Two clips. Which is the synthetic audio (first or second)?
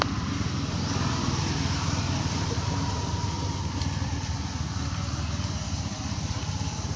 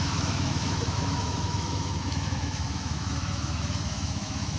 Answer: second